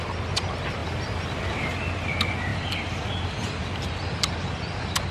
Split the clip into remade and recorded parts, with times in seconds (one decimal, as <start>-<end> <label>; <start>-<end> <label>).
0.0-5.1 recorded